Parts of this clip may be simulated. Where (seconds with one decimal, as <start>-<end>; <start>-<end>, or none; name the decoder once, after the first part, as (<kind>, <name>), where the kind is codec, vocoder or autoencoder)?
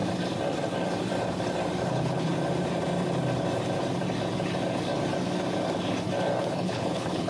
1.9-2.3 (codec, HILCodec); 6.4-7.3